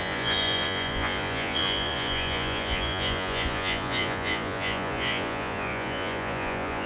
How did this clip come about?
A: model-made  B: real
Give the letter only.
A